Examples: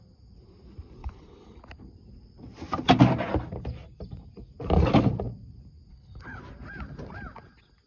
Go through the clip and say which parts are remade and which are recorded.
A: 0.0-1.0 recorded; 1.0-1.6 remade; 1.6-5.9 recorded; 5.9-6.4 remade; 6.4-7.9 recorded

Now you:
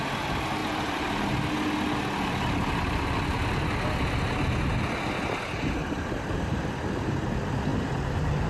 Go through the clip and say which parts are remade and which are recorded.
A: 0.0-0.6 recorded; 0.6-1.4 remade; 1.4-7.7 recorded; 7.7-8.5 remade

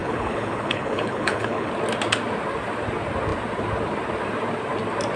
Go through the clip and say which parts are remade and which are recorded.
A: 0.0-1.7 remade; 1.7-5.2 recorded

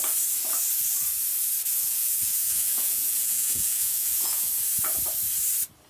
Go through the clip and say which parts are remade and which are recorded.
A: 0.0-1.7 recorded; 1.7-4.5 remade; 4.5-5.9 recorded

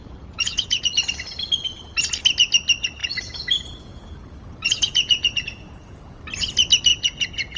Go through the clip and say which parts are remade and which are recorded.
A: 0.0-0.8 remade; 0.8-3.0 recorded; 3.0-6.2 remade; 6.2-6.9 recorded; 6.9-7.6 remade

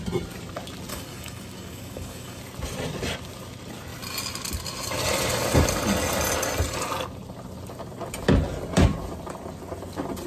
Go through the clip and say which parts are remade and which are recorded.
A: 0.0-0.9 recorded; 0.9-2.4 remade; 2.4-10.3 recorded

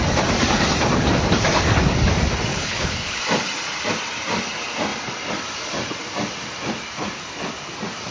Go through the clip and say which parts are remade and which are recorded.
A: 0.0-2.5 recorded; 2.5-3.2 remade; 3.2-8.1 recorded

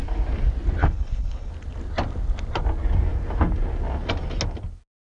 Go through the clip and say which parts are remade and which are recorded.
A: 0.0-0.8 recorded; 0.8-1.5 remade; 1.5-5.0 recorded